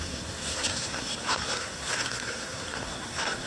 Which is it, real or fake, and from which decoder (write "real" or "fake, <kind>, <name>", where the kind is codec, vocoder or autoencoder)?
fake, codec, SNAC